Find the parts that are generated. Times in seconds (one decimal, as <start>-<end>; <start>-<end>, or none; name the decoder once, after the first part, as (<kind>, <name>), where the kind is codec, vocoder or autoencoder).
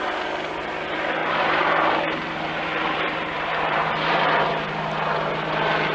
1.2-4.7 (vocoder, BigVGAN v2)